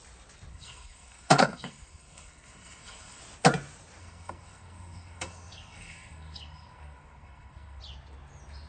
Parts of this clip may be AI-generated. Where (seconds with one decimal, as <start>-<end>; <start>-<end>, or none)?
0.5-3.2; 4.0-7.8